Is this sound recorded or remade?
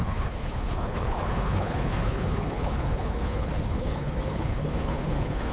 remade